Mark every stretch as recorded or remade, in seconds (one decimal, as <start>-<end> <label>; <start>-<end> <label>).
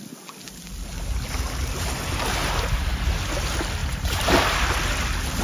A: 0.0-2.4 recorded; 2.4-3.1 remade; 3.1-3.8 recorded; 3.8-4.3 remade; 4.3-5.4 recorded